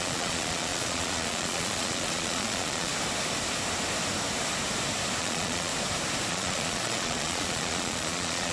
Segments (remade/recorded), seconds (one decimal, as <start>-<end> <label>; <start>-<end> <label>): 0.0-2.9 remade; 2.9-5.2 recorded; 5.2-5.7 remade; 5.7-6.3 recorded; 6.3-8.5 remade